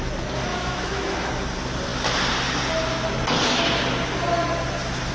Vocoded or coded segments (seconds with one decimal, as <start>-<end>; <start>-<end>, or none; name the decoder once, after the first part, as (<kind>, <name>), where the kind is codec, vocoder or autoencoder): 0.5-1.3 (autoencoder, DAC-VAE)